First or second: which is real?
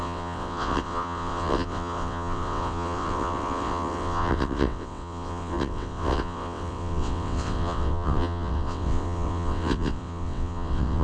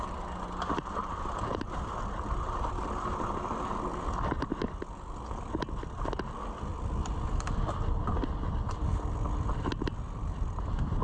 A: second